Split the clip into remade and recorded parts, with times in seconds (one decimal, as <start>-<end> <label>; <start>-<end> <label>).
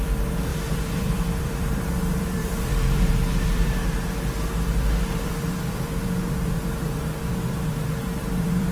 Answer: 0.0-3.8 remade; 3.8-5.2 recorded; 5.2-7.1 remade; 7.1-8.0 recorded; 8.0-8.7 remade